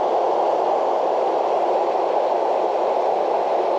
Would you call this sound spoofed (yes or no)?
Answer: no